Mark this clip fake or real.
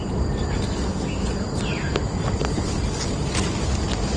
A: real